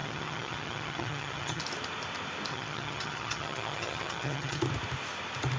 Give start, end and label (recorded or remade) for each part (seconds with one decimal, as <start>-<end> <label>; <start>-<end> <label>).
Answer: 0.0-1.6 remade; 1.6-2.5 recorded; 2.5-4.6 remade; 4.6-5.6 recorded